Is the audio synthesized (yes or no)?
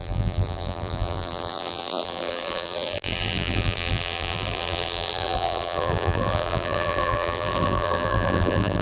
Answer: yes